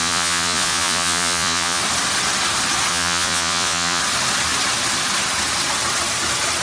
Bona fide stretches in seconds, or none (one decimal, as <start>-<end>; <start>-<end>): 1.8-2.9; 4.0-6.6